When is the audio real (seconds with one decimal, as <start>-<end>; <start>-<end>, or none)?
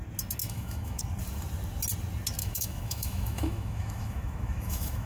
0.0-0.4; 1.0-2.4